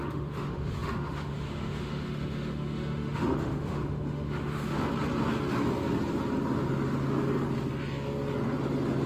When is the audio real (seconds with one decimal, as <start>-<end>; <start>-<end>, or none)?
4.9-9.1